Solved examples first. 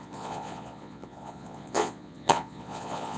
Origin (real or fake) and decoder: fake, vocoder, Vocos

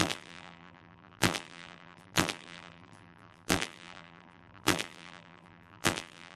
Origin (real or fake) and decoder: fake, vocoder, BigVGAN v2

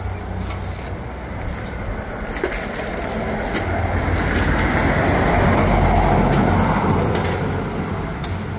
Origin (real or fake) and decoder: real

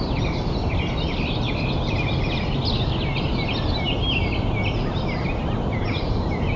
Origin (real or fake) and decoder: real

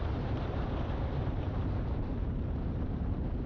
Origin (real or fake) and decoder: fake, vocoder, BigVGAN v2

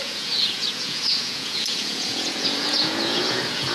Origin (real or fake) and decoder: fake, vocoder, Vocos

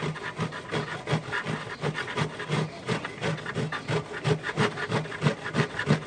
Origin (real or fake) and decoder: real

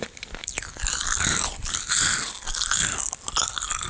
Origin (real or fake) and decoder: real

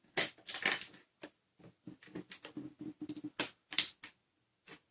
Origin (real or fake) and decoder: real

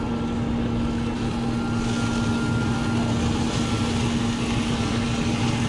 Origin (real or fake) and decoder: real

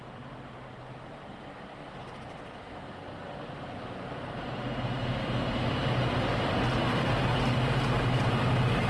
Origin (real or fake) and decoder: real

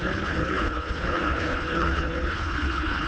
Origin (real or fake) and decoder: fake, codec, HILCodec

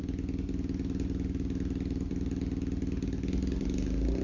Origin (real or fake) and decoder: real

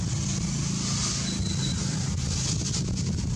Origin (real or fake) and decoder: real